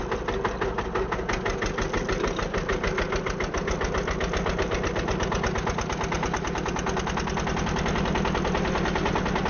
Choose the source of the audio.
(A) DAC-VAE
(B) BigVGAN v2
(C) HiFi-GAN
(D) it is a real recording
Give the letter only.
D